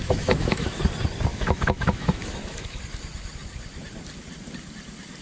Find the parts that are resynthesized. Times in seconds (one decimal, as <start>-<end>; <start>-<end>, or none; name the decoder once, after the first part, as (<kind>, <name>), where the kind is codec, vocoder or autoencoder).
0.0-0.8 (autoencoder, DAC-VAE); 1.3-2.8